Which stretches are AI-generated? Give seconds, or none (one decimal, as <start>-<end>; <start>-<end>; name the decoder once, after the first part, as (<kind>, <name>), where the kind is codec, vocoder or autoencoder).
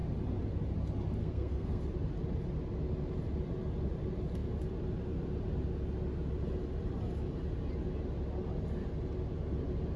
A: 1.2-1.8 (codec, SNAC)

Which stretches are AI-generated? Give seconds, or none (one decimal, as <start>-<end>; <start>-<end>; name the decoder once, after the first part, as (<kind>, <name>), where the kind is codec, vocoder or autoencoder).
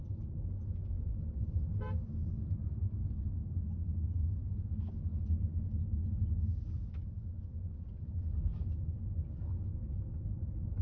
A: none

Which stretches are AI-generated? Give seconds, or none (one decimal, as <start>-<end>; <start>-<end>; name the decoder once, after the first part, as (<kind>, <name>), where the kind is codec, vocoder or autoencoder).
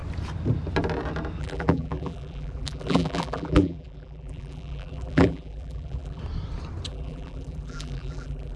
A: 1.4-6.2 (vocoder, BigVGAN v2); 6.9-8.6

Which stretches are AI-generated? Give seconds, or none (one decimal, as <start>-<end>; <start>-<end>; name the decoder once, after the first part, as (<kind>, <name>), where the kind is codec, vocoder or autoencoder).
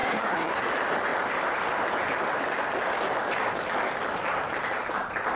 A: 0.0-0.7 (codec, SNAC)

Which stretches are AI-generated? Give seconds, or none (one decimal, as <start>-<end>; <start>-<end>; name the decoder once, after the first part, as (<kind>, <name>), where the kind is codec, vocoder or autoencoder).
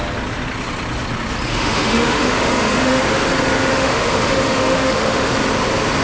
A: 1.5-3.0 (autoencoder, DAC-VAE); 3.7-5.3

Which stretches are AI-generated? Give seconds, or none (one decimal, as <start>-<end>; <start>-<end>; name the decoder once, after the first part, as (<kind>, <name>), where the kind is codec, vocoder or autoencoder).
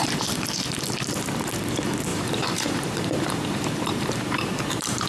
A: 0.0-0.7 (vocoder, BigVGAN v2); 2.1-5.1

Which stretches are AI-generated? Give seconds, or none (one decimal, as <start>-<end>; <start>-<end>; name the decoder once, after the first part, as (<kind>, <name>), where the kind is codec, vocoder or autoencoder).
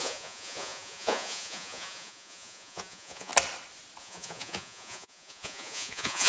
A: 0.0-3.3 (vocoder, Vocos); 4.0-6.3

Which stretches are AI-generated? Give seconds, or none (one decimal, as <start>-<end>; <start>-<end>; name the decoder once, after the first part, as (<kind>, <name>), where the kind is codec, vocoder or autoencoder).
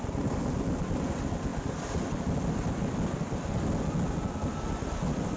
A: none